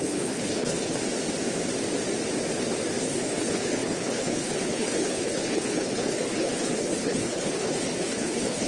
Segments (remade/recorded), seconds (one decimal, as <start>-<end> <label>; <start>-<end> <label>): 0.0-1.0 remade; 1.0-3.0 recorded; 3.0-8.7 remade